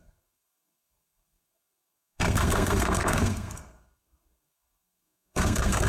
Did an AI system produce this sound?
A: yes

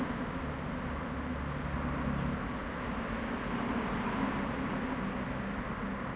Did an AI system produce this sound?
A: no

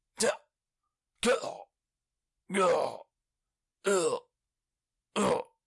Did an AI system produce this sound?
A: no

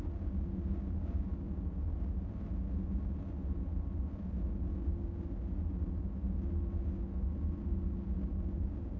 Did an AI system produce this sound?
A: no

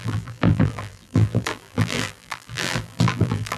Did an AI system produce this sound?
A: yes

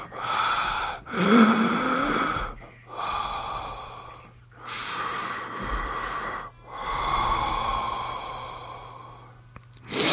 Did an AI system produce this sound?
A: no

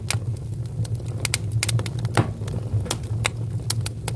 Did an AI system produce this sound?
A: no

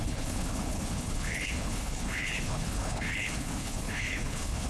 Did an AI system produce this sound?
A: yes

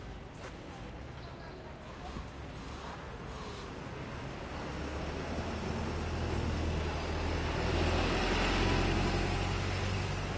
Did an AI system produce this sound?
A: no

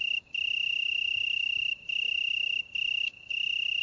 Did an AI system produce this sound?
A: no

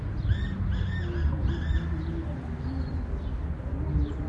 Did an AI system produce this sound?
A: no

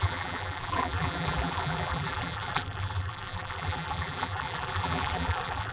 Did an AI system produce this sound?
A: yes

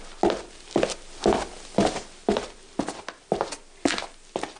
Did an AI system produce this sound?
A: no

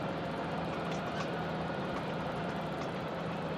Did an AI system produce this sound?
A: yes